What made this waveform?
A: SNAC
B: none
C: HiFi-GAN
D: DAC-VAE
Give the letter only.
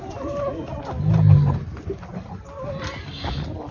B